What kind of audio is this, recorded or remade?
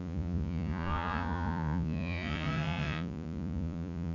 remade